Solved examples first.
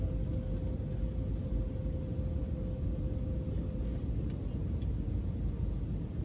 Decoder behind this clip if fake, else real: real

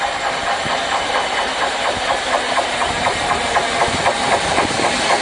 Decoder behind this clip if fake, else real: real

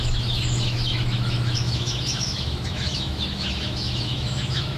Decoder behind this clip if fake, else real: fake, autoencoder, DAC-VAE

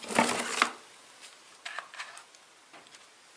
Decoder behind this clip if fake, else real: real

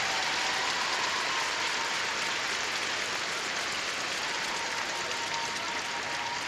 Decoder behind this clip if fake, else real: real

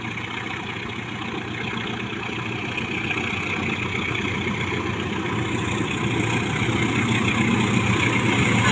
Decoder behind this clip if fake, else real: real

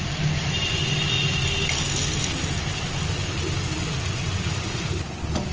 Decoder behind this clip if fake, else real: real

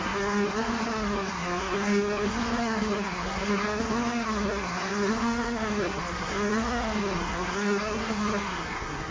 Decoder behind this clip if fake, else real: fake, codec, SNAC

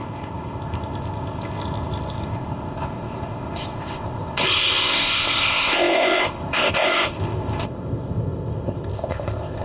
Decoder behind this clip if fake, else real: fake, codec, ZipCodec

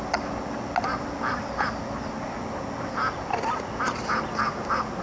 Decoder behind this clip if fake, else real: real